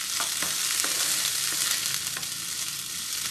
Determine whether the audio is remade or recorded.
recorded